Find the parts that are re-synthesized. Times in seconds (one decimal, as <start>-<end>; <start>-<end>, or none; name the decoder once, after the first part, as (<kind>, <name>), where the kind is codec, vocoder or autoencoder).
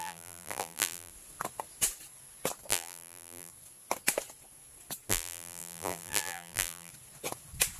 0.0-1.1 (vocoder, BigVGAN v2); 2.7-3.5; 5.1-6.9